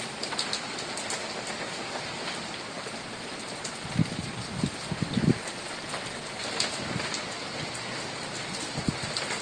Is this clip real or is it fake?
real